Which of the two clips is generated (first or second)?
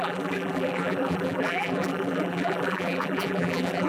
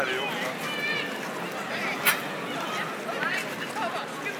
first